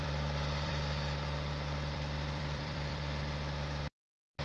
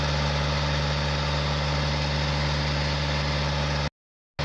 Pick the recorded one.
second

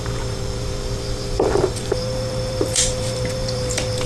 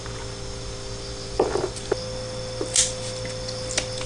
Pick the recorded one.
second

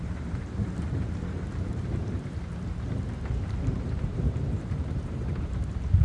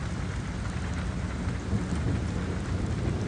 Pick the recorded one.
second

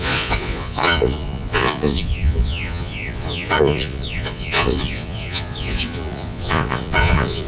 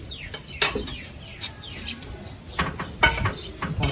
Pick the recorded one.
second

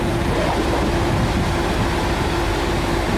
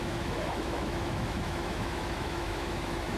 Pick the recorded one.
first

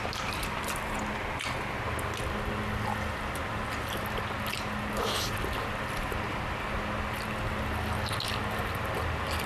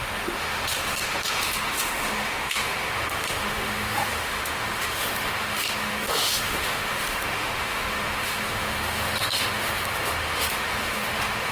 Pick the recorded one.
first